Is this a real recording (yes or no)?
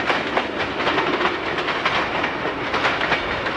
yes